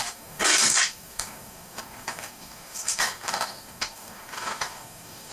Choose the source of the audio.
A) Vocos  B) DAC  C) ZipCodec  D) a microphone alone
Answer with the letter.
B